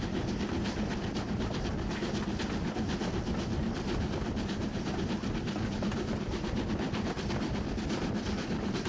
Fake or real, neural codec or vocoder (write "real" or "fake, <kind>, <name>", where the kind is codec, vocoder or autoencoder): real